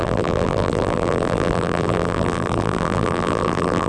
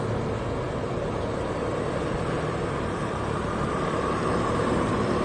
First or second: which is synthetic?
first